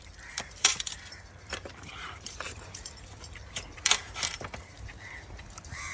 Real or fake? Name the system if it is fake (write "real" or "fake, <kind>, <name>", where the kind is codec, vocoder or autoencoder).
fake, vocoder, BigVGAN v2